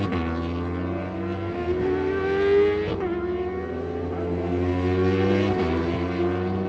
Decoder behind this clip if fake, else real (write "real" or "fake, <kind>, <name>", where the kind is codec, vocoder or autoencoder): real